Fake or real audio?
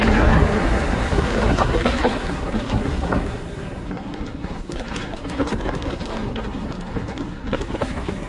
fake